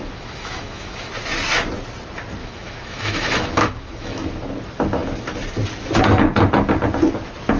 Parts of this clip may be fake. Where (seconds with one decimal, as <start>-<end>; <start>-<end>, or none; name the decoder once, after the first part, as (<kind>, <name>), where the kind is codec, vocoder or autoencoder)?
0.0-1.1 (autoencoder, DAC-VAE); 2.4-4.3